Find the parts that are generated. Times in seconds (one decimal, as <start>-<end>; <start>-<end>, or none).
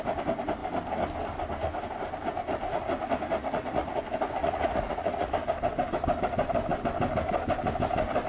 3.4-3.9; 4.4-5.3